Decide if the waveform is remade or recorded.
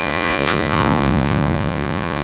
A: remade